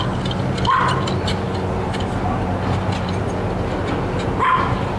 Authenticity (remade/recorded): recorded